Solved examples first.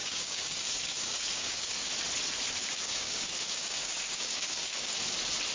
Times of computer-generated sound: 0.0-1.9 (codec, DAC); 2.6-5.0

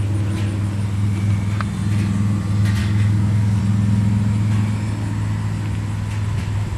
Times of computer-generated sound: 2.8-3.6 (codec, DAC)

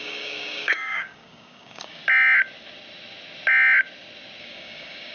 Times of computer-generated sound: 0.0-2.0 (codec, DAC); 4.4-5.1

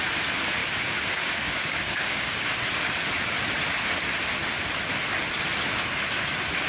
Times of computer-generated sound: 0.6-2.6 (codec, DAC)

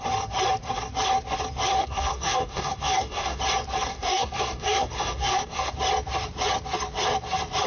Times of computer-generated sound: 1.8-3.4 (codec, DAC); 3.9-5.7

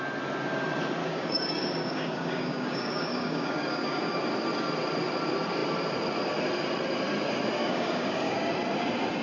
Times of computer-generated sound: 1.0-4.2 (codec, DAC); 7.6-8.5

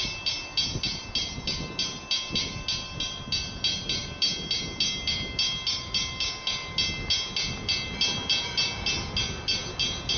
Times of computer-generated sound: none